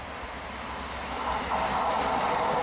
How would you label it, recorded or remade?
recorded